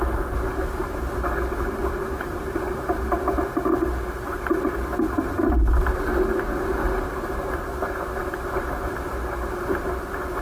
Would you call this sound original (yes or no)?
yes